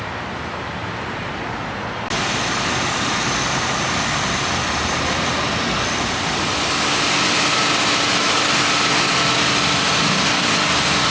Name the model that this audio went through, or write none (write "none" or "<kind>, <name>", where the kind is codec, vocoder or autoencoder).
none